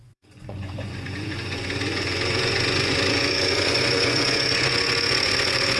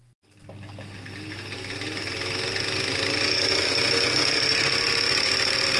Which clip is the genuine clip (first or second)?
second